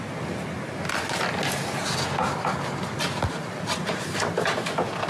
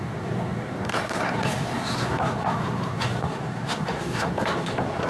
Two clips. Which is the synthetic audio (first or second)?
second